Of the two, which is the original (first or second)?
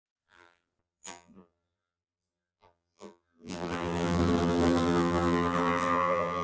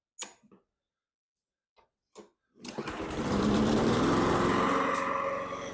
second